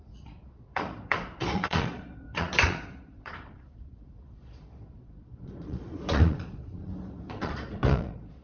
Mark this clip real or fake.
fake